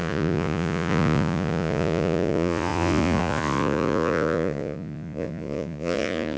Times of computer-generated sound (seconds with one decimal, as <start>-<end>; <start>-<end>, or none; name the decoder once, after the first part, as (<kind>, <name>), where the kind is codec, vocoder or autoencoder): 0.0-6.4 (vocoder, Vocos)